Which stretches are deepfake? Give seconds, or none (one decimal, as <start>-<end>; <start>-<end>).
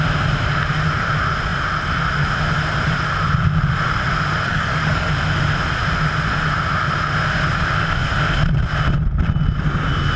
4.5-5.1